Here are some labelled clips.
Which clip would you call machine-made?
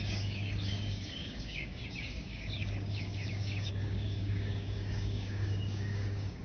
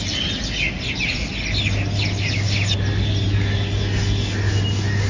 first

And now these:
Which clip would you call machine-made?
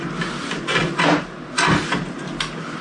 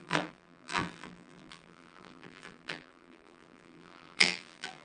second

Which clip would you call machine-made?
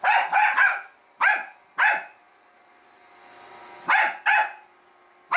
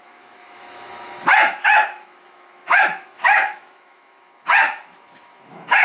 second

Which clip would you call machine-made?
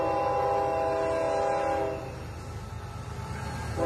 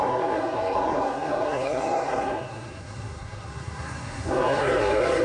second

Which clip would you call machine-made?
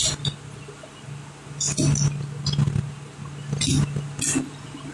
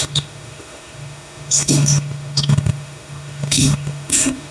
second